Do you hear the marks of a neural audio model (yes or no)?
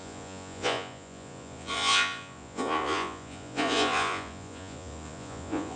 yes